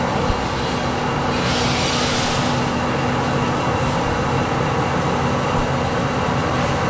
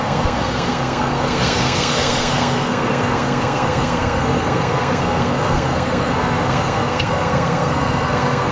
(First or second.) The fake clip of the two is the second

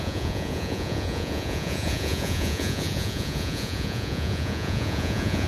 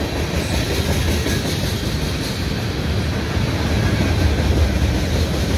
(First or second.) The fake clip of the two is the first